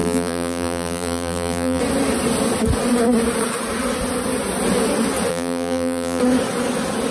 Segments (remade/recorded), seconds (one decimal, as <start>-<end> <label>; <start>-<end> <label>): 0.0-1.8 remade; 1.8-5.3 recorded; 5.3-6.2 remade; 6.2-7.1 recorded